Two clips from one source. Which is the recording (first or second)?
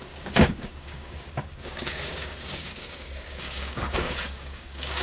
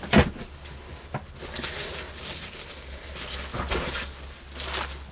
second